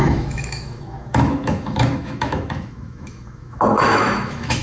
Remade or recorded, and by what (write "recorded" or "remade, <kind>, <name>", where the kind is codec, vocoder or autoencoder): remade, autoencoder, DAC-VAE